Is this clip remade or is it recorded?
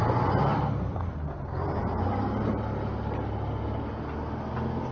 recorded